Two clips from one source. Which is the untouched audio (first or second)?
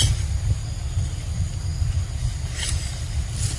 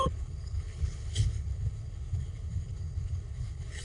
first